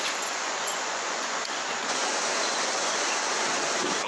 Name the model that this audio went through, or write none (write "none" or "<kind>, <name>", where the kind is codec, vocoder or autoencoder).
vocoder, Vocos